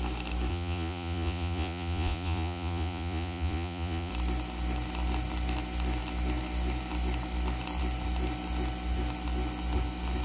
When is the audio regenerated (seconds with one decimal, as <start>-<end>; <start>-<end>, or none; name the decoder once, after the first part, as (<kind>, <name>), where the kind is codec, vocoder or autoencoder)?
0.5-4.1 (vocoder, Vocos)